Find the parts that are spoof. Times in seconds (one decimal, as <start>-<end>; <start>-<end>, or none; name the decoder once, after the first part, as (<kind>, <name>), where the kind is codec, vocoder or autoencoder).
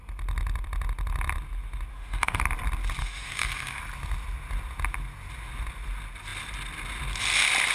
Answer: 1.9-2.4 (autoencoder, DAC-VAE); 3.0-3.8